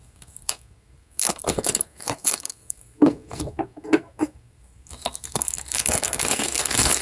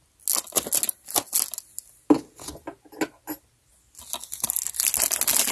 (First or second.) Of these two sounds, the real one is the second